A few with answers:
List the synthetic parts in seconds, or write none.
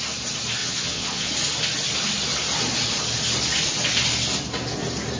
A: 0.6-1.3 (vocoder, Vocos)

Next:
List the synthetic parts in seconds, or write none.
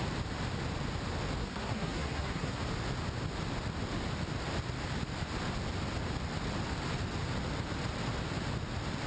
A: 1.4-2.6 (codec, SNAC)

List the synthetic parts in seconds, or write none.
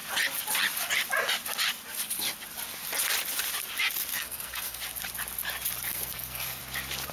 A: 4.1-4.8 (codec, SNAC); 5.9-6.6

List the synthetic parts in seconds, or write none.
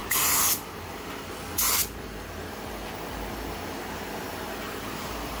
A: none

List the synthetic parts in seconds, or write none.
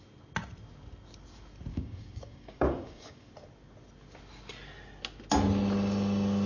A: 1.7-3.3 (codec, DAC)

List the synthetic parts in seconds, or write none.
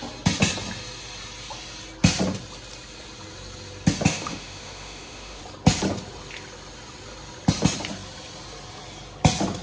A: 4.1-5.4 (autoencoder, DAC-VAE)